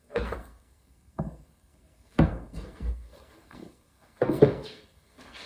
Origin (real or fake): fake